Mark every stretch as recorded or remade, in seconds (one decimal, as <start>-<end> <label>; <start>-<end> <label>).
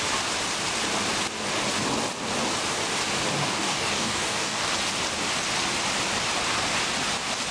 0.0-3.4 recorded; 3.4-4.7 remade; 4.7-7.5 recorded